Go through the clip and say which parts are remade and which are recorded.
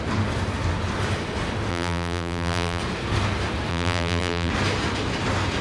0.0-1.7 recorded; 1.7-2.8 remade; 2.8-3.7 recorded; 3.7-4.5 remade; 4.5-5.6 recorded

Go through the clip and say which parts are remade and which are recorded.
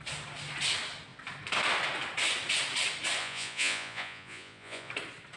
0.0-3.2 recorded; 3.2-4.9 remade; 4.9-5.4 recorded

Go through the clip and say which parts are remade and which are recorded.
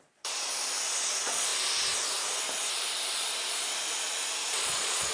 0.0-0.5 remade; 0.5-1.1 recorded; 1.1-1.5 remade; 1.5-4.6 recorded; 4.6-5.1 remade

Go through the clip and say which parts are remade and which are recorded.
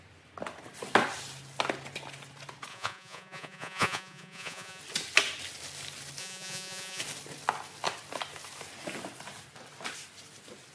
0.0-2.7 recorded; 2.7-4.8 remade; 4.8-6.2 recorded; 6.2-7.0 remade; 7.0-10.7 recorded